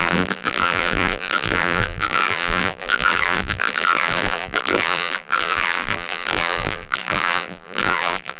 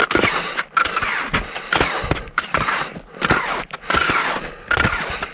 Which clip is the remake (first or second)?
first